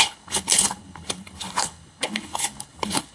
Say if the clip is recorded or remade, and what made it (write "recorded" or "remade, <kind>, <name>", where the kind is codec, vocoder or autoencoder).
remade, codec, HILCodec